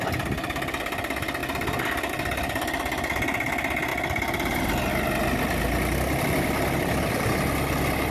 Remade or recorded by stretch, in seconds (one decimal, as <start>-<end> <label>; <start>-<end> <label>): 0.0-8.1 recorded